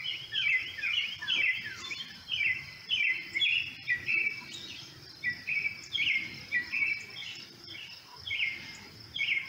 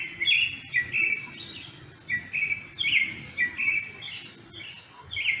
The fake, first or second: first